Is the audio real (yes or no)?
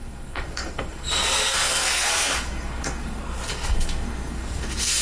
no